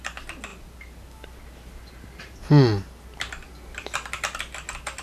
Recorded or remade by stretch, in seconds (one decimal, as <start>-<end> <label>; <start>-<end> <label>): 0.0-5.0 recorded

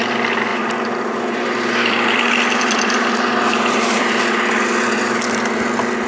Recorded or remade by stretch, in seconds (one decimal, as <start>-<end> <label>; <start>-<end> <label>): 0.0-0.5 recorded; 0.5-4.2 remade; 4.2-6.1 recorded